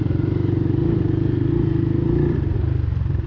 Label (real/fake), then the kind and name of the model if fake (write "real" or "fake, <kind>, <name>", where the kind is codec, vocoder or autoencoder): real